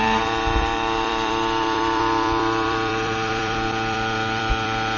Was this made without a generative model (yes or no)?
no